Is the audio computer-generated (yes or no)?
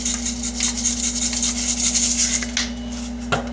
no